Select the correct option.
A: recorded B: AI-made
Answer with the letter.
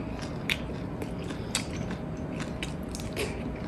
A